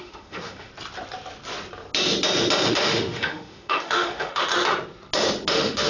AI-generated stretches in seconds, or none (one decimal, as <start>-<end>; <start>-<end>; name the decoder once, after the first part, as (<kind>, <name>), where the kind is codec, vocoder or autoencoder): 0.0-0.7 (autoencoder, DAC-VAE); 2.7-4.5; 5.5-5.9